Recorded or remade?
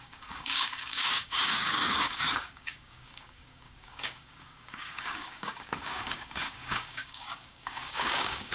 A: remade